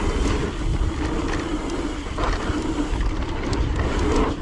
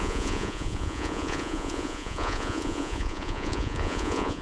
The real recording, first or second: first